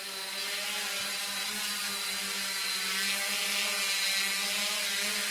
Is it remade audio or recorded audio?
recorded